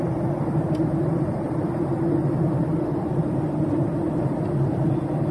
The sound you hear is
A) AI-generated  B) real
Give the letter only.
A